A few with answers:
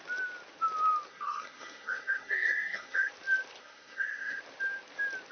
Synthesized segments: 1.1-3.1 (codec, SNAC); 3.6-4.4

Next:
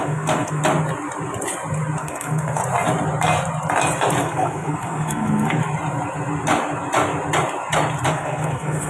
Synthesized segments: 0.0-0.6 (codec, SNAC); 2.0-2.6; 4.2-5.6; 8.1-8.9

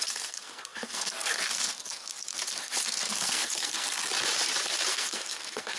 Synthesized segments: 0.0-4.0 (codec, SNAC); 4.9-5.8

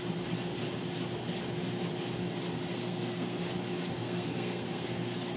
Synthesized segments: 2.7-3.4 (codec, SNAC); 4.0-5.4

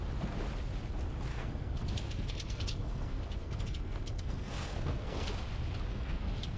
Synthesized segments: 1.3-5.3 (codec, SNAC); 5.9-6.6

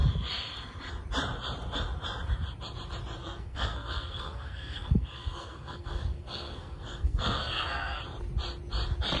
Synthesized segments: 3.2-8.0 (codec, SNAC)

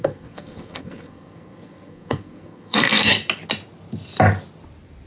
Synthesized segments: 0.0-3.1 (codec, SNAC)